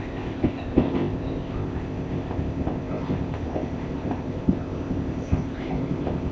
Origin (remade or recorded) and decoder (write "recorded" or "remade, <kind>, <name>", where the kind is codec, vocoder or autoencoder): remade, codec, ZipCodec